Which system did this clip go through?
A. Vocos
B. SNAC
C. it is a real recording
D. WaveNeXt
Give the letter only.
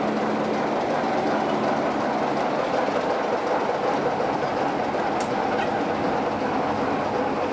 C